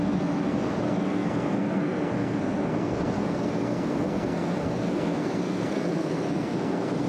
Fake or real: fake